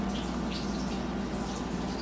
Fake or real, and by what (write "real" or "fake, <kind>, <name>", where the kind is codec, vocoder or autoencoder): real